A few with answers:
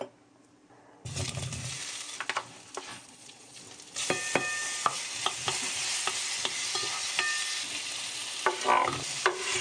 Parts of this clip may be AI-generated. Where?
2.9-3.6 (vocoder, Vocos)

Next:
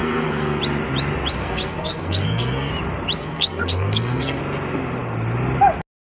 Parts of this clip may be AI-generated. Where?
0.0-0.6 (codec, SNAC); 1.4-2.7; 3.2-4.4

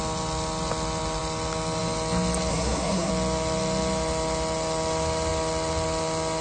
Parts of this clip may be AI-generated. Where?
2.5-3.1 (codec, SNAC)

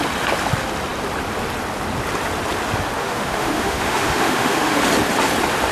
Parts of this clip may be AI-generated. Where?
3.0-4.8 (autoencoder, DAC-VAE)

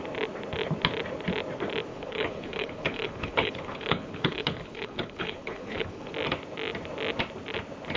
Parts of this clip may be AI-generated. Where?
1.9-6.1 (codec, HILCodec)

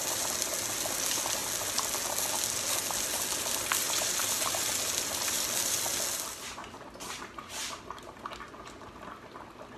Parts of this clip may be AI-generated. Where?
none

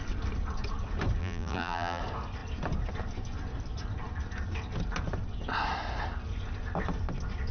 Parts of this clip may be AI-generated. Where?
1.2-2.0 (vocoder, BigVGAN v2)

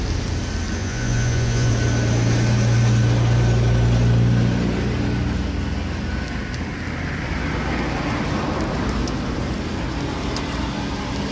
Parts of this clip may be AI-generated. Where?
0.8-1.7 (vocoder, Vocos)